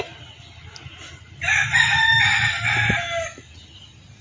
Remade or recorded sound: recorded